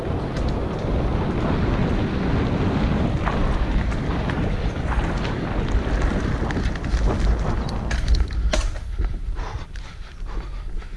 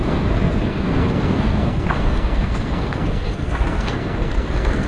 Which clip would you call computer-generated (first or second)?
second